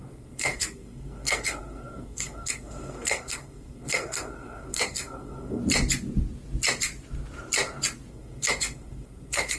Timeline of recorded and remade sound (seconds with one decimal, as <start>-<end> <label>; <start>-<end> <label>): 0.0-5.6 remade; 5.6-8.1 recorded; 8.1-9.6 remade